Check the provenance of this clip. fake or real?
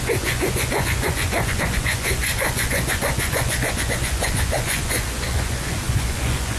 fake